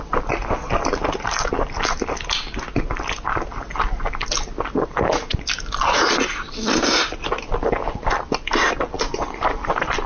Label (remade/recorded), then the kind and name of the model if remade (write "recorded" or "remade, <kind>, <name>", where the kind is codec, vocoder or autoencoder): recorded